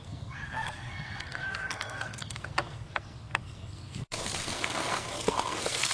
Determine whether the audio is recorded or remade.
remade